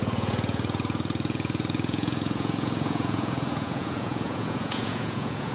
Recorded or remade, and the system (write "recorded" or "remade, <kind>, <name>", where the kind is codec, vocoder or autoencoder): remade, vocoder, Vocos